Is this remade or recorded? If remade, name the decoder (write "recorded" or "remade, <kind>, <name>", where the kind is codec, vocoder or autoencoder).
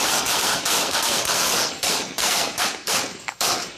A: remade, codec, SNAC